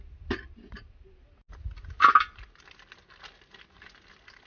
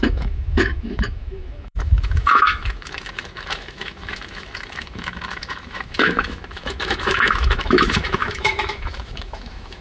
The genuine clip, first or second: first